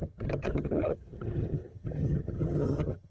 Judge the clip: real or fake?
fake